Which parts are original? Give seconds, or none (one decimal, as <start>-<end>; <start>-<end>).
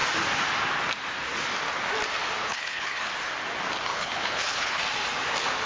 0.0-2.4; 3.1-3.9; 4.8-5.7